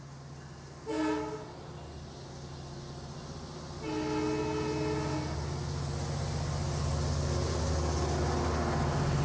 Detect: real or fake real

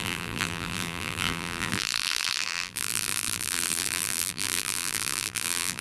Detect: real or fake fake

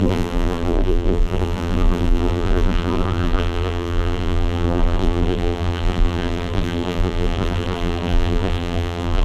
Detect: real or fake fake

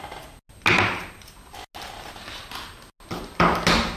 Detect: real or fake real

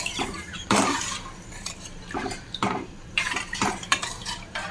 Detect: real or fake fake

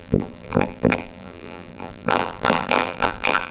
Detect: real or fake fake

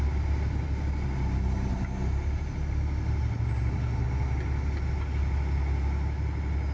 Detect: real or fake real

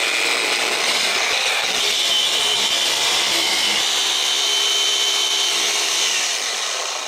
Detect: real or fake fake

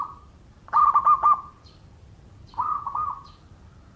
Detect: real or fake fake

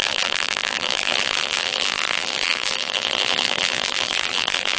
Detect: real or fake fake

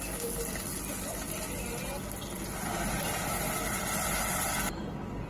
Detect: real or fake real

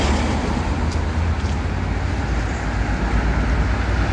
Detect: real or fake real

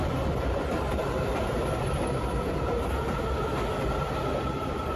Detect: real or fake fake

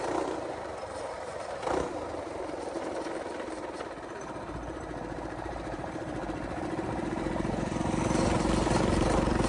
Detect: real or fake fake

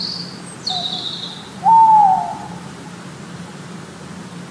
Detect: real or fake real